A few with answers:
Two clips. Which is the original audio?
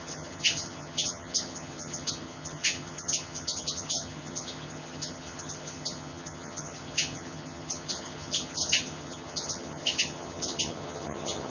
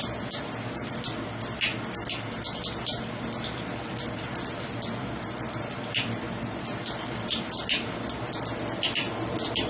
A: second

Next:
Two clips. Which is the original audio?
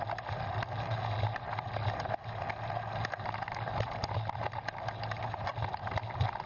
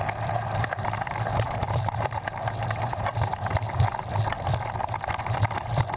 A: first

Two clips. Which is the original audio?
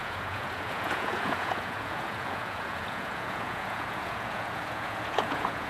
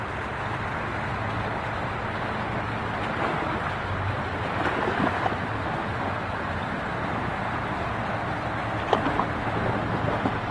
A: second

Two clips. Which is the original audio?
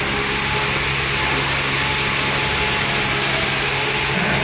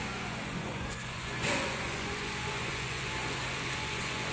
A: first